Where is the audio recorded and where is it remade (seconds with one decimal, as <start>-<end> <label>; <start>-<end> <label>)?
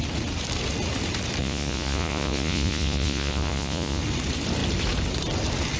0.0-1.4 recorded; 1.4-4.0 remade; 4.0-5.8 recorded